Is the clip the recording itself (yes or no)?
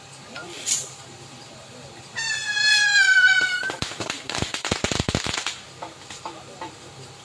no